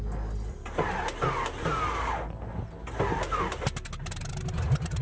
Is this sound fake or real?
real